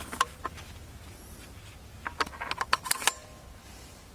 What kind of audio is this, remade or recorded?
recorded